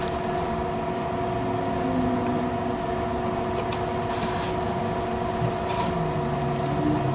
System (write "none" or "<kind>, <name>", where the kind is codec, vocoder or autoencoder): none